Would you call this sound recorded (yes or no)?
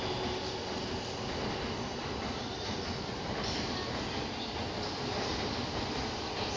yes